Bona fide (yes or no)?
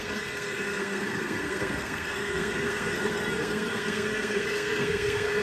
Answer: no